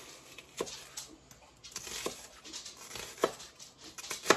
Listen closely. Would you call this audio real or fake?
real